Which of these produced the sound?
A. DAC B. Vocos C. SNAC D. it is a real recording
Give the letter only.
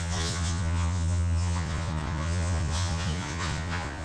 B